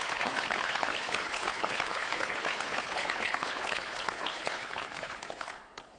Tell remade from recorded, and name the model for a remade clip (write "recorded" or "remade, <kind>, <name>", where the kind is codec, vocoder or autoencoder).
remade, codec, HILCodec